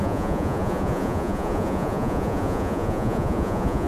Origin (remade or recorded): remade